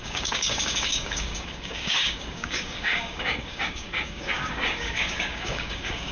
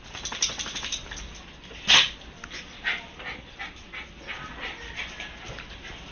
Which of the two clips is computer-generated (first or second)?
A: first